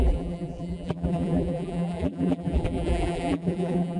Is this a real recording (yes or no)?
no